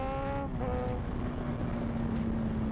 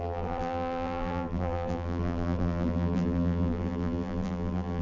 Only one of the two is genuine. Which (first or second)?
first